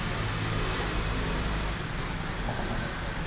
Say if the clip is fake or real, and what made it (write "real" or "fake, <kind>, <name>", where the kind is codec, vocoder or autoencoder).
real